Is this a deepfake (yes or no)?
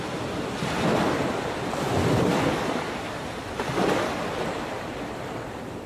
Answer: yes